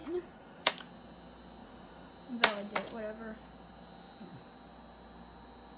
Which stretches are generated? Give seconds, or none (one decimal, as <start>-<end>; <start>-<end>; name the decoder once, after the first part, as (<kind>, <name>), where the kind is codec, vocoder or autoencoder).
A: 0.0-0.7 (vocoder, Vocos); 1.6-2.1